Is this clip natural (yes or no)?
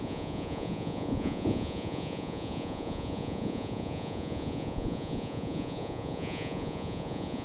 no